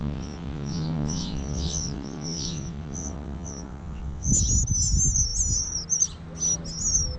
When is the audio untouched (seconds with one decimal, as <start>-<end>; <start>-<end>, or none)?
4.3-7.2